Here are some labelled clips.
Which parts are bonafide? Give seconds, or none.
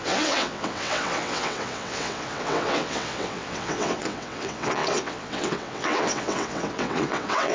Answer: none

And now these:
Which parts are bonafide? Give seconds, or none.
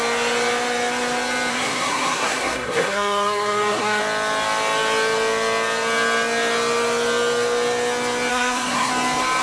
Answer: 0.0-1.5; 4.0-8.3; 8.9-9.4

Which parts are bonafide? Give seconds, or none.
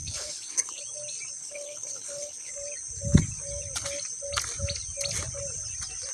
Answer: 0.8-1.4; 2.5-6.1